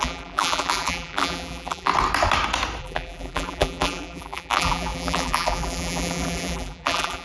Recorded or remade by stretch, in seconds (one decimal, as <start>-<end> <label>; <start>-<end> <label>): 0.0-1.9 remade; 1.9-2.8 recorded; 2.8-7.2 remade